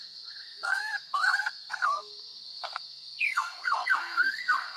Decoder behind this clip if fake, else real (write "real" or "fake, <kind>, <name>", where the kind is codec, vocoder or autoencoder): fake, codec, SNAC